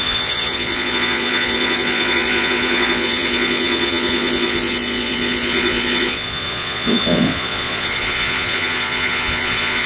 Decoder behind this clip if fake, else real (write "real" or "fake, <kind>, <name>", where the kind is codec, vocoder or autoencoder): fake, vocoder, Vocos